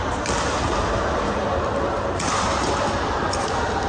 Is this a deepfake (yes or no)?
no